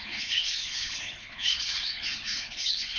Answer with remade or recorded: remade